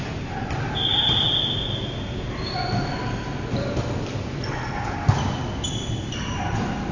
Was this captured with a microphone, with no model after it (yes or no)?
yes